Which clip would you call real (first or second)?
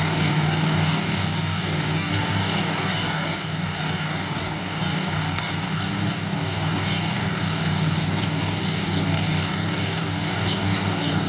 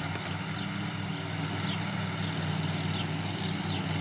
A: second